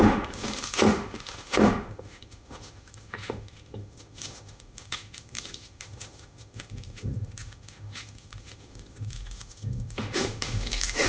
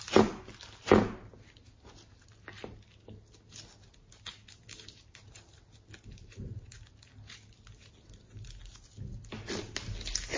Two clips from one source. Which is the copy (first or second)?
first